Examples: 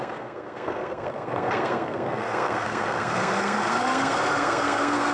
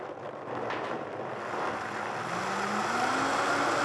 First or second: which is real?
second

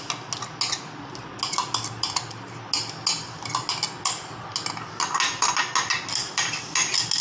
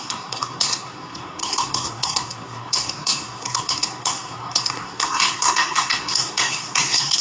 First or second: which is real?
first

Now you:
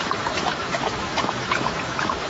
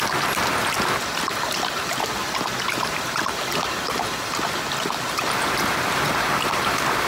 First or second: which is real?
second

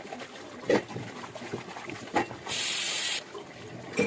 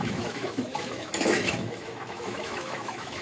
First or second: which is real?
first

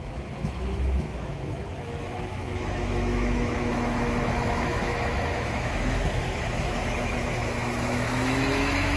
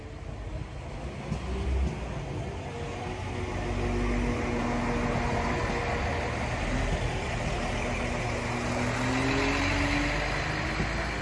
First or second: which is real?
second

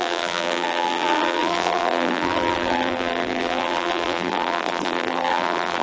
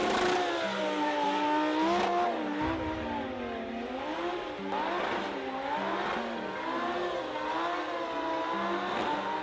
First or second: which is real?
second